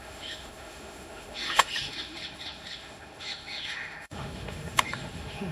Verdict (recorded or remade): remade